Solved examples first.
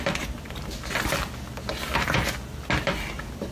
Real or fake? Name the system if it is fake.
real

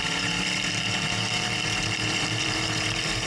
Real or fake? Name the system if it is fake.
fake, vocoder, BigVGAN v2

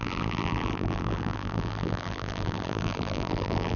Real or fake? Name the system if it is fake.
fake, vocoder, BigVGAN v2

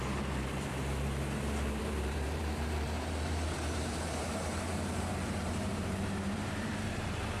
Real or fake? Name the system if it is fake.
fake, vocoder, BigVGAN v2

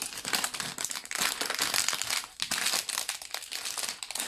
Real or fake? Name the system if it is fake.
real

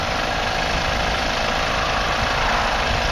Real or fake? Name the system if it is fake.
fake, vocoder, BigVGAN v2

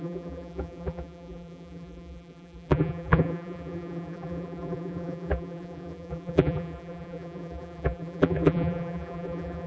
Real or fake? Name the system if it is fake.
fake, vocoder, BigVGAN v2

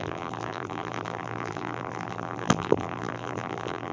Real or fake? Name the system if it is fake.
fake, vocoder, BigVGAN v2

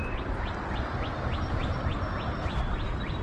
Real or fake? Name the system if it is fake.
real